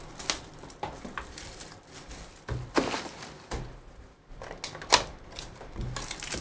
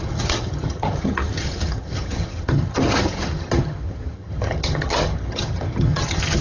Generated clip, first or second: second